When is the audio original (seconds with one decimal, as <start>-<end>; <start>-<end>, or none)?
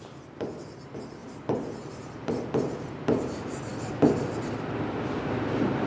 0.0-5.9